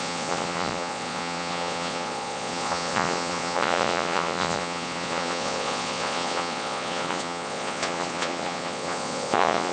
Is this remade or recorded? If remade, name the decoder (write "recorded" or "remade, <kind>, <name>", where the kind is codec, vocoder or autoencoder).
remade, vocoder, Vocos